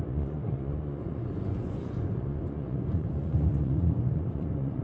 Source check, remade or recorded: remade